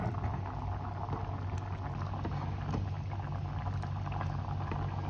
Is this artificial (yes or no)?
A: no